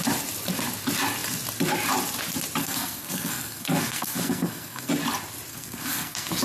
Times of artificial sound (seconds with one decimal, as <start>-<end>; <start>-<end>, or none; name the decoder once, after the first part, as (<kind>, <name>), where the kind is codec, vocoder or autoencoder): 2.6-4.9 (codec, SNAC); 5.5-6.4